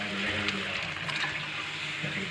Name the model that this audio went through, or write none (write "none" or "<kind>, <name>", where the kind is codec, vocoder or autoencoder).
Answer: none